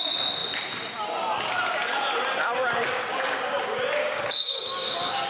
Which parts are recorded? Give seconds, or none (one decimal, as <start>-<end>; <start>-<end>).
0.0-4.0